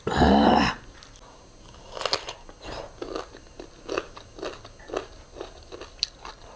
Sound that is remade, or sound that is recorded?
recorded